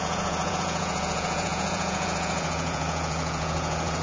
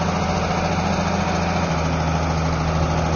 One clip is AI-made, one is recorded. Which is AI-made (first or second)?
first